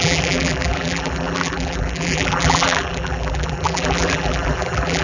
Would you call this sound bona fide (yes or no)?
no